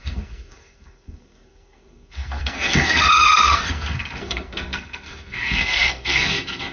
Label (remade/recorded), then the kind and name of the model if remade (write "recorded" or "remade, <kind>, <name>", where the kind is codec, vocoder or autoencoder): remade, codec, SNAC